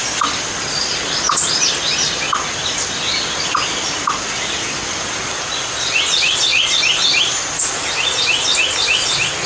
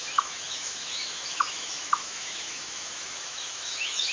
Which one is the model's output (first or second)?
second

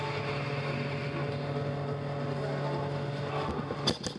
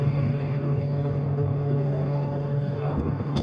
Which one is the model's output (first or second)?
second